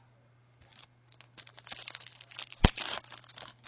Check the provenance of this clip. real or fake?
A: real